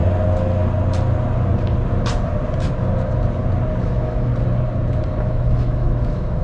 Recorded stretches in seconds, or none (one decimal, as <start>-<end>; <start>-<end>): 0.0-3.8; 4.3-5.2